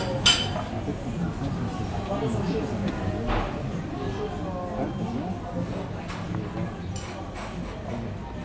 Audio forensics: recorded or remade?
recorded